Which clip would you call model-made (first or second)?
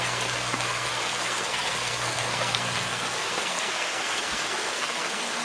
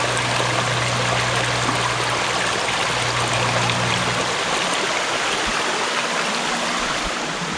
first